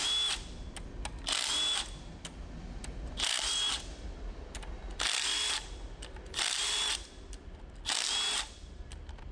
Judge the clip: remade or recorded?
recorded